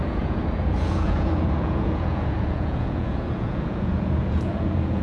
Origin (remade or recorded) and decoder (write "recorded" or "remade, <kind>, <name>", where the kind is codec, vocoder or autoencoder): remade, vocoder, Vocos